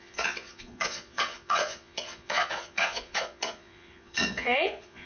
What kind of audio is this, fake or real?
fake